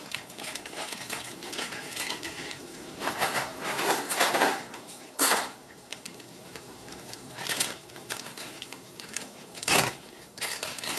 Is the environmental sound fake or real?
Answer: fake